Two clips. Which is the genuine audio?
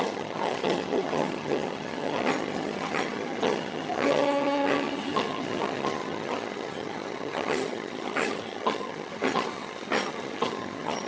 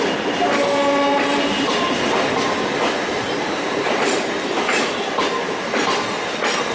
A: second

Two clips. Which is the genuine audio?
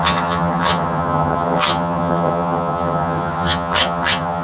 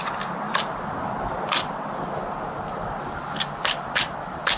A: second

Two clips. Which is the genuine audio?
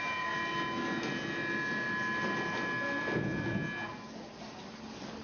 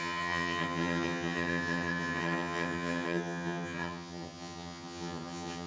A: first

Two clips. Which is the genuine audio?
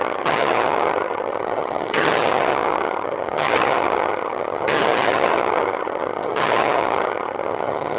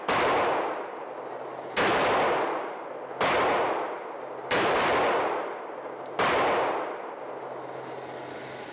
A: second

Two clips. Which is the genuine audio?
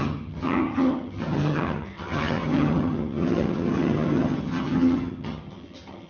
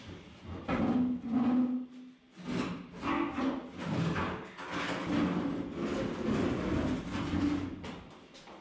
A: second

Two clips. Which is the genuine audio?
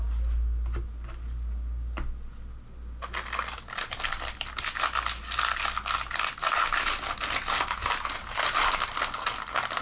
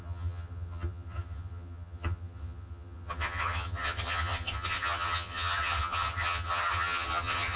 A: first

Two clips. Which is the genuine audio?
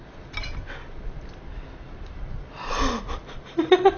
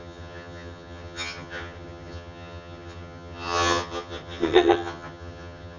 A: first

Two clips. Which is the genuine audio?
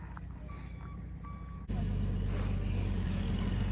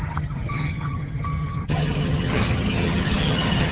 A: first